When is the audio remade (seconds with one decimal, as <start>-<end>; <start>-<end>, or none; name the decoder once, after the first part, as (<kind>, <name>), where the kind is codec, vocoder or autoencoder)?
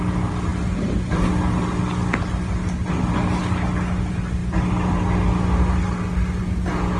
none